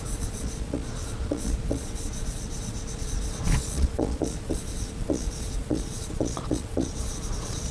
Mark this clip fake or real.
fake